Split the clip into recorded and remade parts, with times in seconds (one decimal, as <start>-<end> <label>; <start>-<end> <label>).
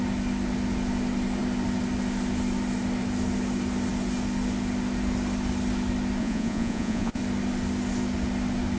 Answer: 0.0-6.2 recorded; 6.2-7.2 remade; 7.2-8.8 recorded